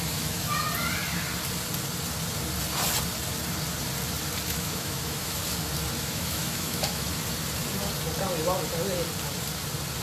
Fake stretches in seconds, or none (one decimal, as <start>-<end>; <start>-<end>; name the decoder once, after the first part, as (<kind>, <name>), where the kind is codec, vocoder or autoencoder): 0.0-0.5 (autoencoder, DAC-VAE); 4.5-5.4; 6.0-7.1